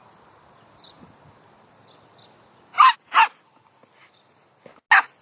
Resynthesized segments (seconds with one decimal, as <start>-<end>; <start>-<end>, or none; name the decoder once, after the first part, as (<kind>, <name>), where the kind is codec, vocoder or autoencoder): none

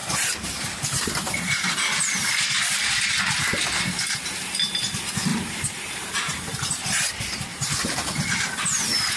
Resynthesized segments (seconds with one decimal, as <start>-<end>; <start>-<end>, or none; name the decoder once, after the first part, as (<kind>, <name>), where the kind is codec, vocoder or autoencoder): 0.0-1.1 (vocoder, BigVGAN v2); 5.3-6.6; 7.5-8.1

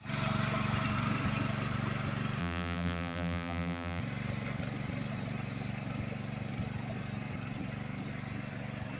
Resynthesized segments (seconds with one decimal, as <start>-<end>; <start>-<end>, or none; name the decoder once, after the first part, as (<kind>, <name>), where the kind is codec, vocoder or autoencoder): 2.4-4.0 (vocoder, BigVGAN v2)

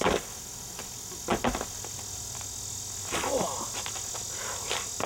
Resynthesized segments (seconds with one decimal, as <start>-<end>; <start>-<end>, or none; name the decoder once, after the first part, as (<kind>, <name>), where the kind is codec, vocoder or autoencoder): none

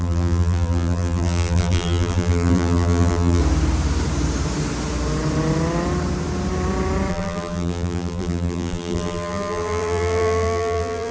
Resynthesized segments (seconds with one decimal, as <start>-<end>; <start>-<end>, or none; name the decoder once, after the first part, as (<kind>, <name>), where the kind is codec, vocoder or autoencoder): 0.0-3.4 (vocoder, BigVGAN v2); 7.1-11.1

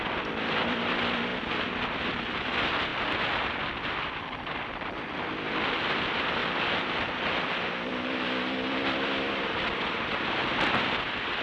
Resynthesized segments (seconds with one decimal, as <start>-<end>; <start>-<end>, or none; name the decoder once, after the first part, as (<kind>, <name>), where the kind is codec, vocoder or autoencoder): 0.0-1.3 (vocoder, BigVGAN v2); 2.0-2.9; 3.7-6.4; 7.9-11.4

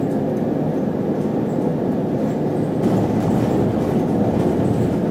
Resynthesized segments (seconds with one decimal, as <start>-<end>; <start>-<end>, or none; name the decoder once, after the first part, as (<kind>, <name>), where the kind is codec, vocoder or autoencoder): none